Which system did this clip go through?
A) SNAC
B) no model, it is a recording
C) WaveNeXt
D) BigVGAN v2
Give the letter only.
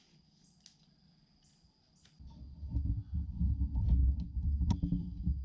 B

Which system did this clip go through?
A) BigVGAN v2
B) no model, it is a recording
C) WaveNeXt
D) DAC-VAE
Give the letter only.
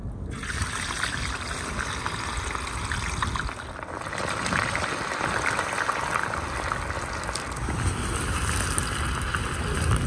B